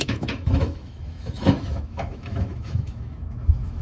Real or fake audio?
fake